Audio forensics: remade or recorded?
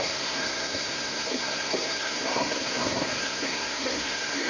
remade